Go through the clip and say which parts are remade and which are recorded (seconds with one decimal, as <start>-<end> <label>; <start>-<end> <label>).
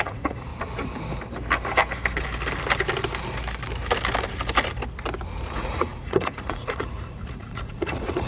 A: 0.0-0.5 remade; 0.5-5.5 recorded; 5.5-8.3 remade